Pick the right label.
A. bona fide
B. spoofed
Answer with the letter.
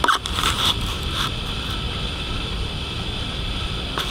A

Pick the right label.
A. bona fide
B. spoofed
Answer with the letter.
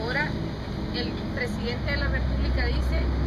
A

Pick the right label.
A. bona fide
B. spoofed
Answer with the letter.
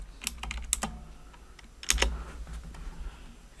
A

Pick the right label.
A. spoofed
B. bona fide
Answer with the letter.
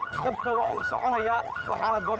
A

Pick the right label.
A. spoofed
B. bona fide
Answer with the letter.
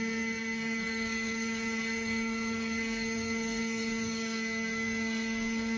A